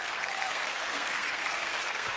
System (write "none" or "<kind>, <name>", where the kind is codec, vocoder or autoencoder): codec, SNAC